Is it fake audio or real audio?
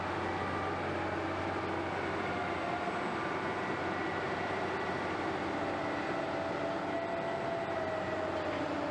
real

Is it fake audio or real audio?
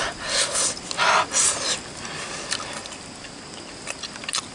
real